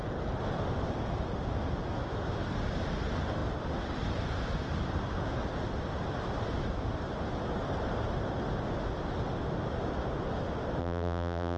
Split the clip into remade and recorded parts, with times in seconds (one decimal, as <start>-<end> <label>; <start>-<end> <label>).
0.0-10.8 recorded; 10.8-11.6 remade